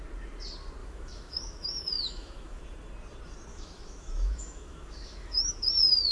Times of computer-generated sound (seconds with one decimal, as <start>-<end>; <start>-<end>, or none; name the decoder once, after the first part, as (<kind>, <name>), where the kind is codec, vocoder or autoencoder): 0.8-2.6 (autoencoder, DAC-VAE); 3.5-5.6